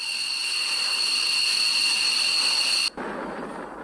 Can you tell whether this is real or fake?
real